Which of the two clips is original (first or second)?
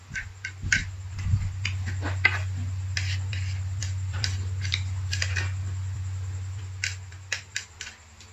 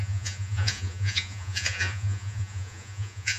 first